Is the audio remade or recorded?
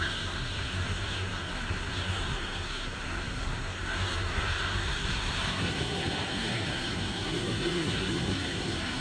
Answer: remade